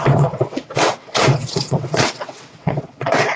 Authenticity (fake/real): fake